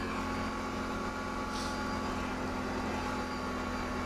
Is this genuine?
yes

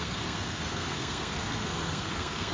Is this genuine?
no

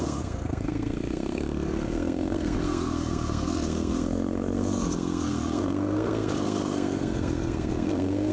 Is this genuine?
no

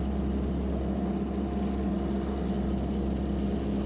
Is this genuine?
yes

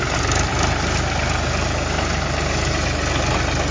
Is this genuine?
yes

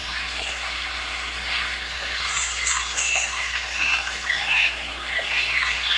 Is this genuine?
no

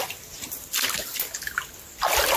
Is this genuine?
yes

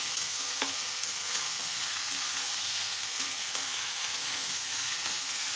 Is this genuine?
no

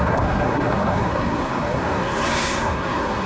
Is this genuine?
no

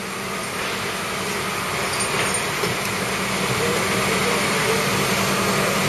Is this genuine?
yes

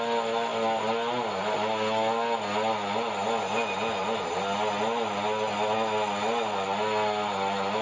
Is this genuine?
yes